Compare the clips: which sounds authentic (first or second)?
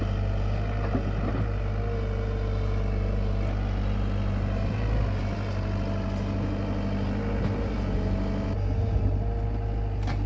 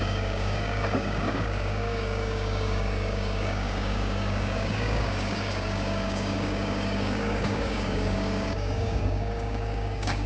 first